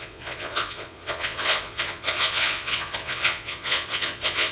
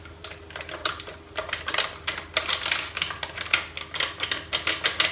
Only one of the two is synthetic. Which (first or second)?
first